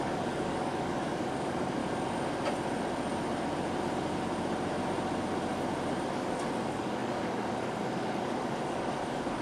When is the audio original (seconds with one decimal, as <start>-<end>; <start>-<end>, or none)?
1.8-6.1